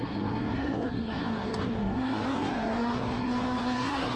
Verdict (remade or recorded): remade